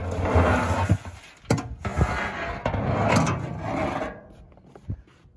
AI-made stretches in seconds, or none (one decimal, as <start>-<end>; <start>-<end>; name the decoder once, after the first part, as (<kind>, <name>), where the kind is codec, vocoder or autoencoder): none